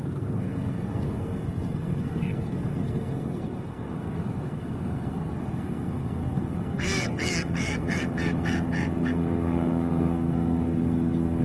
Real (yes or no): no